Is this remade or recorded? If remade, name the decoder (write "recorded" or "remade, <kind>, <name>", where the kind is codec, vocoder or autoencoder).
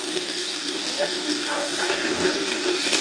remade, codec, DAC